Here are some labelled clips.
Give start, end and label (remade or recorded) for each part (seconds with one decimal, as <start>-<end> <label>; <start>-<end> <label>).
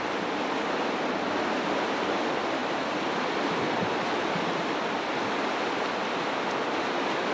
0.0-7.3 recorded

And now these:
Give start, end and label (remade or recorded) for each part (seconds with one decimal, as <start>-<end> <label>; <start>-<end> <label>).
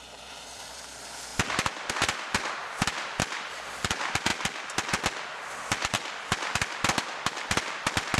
0.0-4.3 remade; 4.3-5.7 recorded; 5.7-8.2 remade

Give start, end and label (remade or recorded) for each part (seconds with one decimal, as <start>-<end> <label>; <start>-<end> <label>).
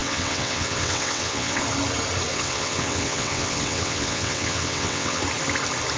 0.0-1.6 remade; 1.6-2.3 recorded; 2.3-5.2 remade; 5.2-6.0 recorded